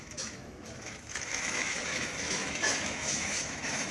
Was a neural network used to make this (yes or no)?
yes